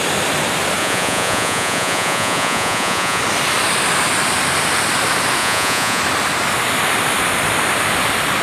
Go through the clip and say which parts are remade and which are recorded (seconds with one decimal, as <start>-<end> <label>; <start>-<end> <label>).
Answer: 0.0-0.8 recorded; 0.8-3.2 remade; 3.2-5.4 recorded; 5.4-6.0 remade; 6.0-8.4 recorded